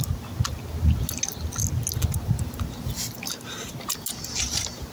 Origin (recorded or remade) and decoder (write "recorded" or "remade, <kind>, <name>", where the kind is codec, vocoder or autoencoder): recorded